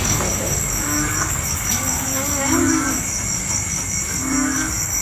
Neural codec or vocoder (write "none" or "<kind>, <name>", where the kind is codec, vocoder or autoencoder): codec, DAC